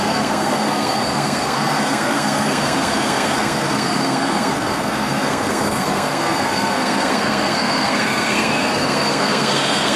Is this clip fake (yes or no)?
yes